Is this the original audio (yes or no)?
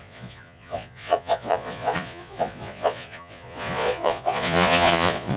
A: no